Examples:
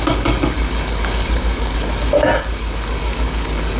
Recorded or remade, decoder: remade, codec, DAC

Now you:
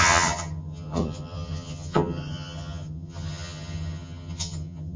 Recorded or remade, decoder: remade, vocoder, HiFi-GAN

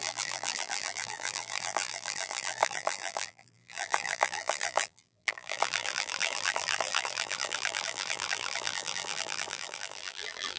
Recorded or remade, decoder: remade, vocoder, BigVGAN v2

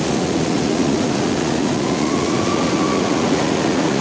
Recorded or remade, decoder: remade, vocoder, Vocos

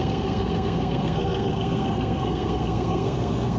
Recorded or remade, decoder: remade, codec, SNAC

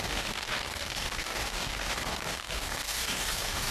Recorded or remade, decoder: remade, codec, DAC